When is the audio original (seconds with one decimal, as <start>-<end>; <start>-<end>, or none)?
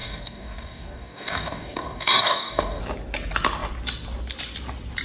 2.8-5.0